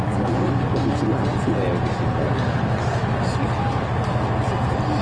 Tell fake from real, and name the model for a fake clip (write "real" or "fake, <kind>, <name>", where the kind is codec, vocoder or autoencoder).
real